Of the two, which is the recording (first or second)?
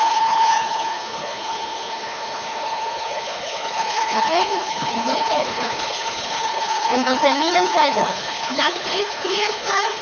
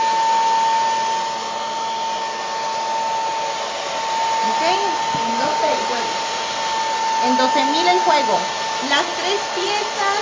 second